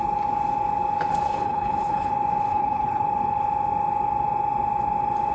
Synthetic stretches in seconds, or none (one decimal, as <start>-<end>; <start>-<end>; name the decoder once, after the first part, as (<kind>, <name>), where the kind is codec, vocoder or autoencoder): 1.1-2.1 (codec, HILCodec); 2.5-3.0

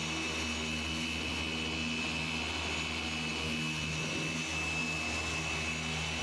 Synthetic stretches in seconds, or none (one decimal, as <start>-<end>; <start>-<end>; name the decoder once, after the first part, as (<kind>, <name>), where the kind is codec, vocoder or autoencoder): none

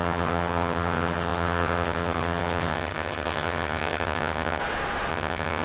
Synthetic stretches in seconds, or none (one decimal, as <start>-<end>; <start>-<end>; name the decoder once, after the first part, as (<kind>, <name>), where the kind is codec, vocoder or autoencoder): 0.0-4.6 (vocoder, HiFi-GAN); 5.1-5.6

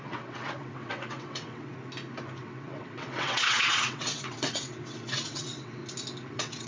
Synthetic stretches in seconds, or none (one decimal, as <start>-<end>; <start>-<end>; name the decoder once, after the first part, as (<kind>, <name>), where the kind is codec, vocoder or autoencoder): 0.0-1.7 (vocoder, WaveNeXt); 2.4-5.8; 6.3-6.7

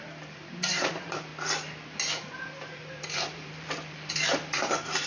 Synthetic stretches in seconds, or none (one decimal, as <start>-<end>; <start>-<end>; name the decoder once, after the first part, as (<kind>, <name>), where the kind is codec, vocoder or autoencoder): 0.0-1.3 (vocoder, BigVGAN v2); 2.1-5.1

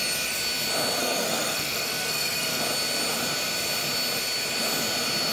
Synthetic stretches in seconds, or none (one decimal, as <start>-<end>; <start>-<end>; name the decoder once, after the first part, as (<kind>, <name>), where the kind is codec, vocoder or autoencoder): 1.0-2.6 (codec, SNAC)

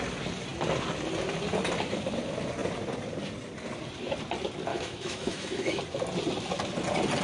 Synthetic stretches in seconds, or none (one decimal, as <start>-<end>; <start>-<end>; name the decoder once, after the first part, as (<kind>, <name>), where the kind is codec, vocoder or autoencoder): 4.7-5.8 (autoencoder, DAC-VAE)

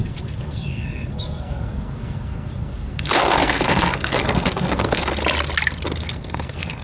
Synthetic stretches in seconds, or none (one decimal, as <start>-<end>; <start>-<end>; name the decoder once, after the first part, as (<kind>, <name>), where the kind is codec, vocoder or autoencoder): 0.0-5.2 (codec, SNAC); 6.0-6.8